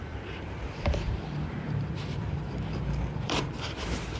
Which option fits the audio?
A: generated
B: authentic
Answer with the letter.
A